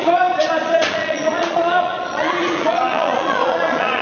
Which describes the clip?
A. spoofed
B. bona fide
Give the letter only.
A